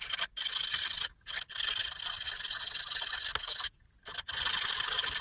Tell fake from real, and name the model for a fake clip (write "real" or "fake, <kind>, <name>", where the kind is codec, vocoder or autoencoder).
real